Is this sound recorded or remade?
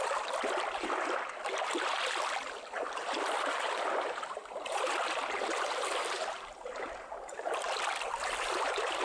remade